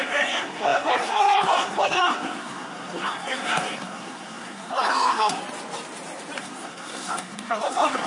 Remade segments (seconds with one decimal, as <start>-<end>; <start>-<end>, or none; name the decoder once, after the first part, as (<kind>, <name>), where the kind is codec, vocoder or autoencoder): 0.0-5.4 (codec, SNAC); 6.4-8.1